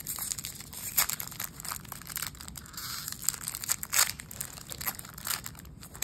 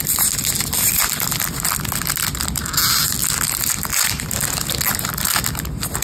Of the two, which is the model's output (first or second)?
first